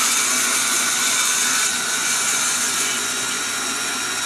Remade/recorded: remade